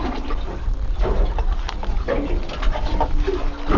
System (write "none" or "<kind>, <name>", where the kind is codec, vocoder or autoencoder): none